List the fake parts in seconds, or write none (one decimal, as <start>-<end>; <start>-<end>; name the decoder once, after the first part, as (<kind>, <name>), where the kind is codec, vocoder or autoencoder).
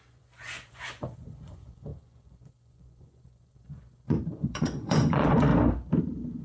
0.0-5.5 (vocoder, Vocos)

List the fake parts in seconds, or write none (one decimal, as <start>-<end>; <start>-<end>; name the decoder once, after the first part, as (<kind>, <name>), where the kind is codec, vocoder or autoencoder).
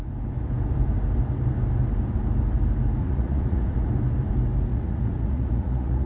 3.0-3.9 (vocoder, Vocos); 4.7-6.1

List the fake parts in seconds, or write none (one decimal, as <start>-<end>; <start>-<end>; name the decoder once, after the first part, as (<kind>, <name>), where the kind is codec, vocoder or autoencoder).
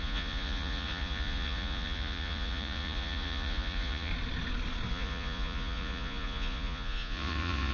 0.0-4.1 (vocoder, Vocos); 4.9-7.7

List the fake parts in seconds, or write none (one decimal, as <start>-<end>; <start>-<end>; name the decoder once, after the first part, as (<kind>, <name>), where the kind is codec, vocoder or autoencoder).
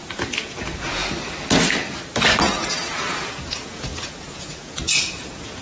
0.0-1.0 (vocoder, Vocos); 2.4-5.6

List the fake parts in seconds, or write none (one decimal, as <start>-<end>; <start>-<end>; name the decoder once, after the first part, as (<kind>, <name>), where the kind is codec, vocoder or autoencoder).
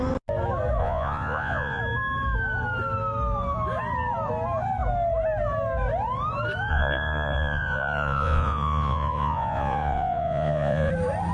0.8-1.8 (vocoder, Vocos); 6.7-10.9